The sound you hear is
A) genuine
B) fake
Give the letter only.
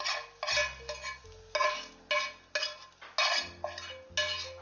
A